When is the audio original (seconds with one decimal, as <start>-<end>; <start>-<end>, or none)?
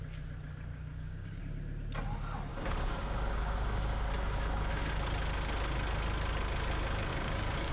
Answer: 0.0-0.7; 1.4-2.5; 4.1-7.1